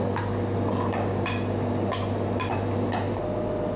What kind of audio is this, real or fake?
real